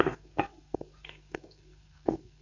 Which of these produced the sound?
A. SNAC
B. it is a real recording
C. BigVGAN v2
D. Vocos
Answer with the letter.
A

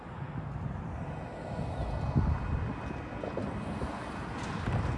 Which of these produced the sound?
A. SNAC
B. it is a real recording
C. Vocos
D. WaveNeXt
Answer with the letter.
B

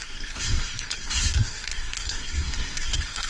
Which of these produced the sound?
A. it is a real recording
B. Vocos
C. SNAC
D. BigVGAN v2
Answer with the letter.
C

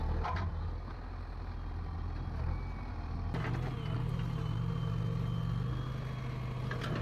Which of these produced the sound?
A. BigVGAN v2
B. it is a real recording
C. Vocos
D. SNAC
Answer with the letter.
B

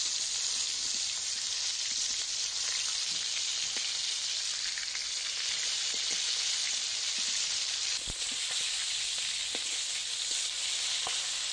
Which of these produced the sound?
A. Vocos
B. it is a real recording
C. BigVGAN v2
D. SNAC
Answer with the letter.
B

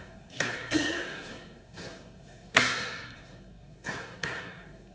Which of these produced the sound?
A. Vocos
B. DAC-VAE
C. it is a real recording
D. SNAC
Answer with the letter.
D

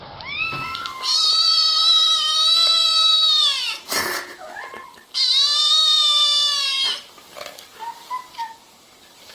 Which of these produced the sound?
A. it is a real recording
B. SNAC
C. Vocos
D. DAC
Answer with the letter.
A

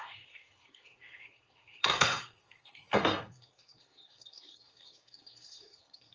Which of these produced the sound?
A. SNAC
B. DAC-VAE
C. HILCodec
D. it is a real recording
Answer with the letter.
A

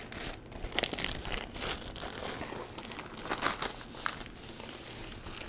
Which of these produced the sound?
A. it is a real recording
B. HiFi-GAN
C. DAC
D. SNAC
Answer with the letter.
A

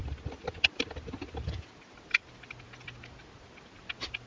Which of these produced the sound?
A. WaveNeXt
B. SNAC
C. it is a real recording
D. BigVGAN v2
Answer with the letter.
C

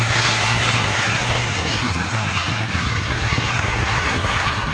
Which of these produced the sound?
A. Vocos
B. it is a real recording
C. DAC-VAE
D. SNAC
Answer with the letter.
D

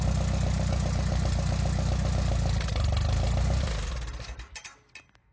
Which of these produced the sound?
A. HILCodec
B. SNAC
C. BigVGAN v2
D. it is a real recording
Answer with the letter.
D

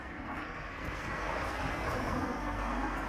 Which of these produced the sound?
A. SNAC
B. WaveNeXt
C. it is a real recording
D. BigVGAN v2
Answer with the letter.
A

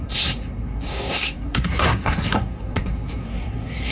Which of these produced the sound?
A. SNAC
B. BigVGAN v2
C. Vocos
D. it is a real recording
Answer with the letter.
A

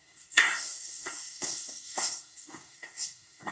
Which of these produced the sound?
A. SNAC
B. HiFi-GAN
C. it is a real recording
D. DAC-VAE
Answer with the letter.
A